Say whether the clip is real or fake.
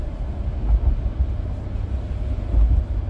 real